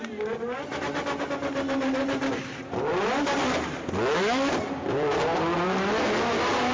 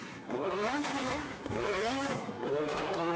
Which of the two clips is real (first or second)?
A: first